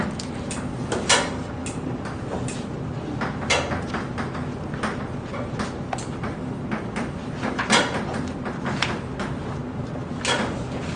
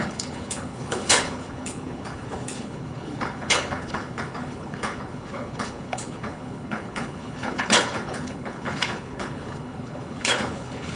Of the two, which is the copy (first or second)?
second